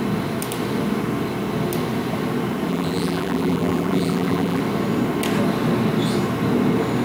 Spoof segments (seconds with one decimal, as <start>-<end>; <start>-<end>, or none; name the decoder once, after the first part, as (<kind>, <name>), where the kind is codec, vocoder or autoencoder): 2.7-4.6 (vocoder, BigVGAN v2)